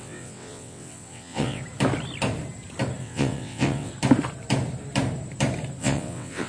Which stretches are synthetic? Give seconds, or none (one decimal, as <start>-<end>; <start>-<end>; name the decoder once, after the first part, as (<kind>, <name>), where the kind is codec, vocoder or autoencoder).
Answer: 0.0-1.6 (vocoder, WaveNeXt); 3.0-3.9; 5.8-6.5